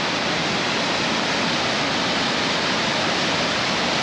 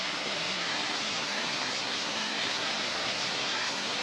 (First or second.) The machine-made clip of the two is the second